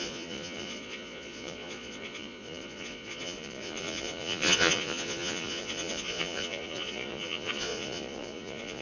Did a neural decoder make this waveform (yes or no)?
yes